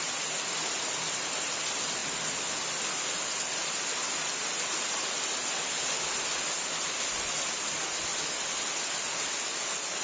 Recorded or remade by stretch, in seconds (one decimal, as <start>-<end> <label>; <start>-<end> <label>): 0.0-10.0 recorded